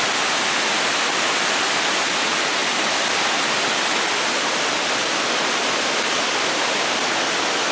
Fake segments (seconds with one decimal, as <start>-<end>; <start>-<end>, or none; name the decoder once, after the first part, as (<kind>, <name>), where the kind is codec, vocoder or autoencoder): none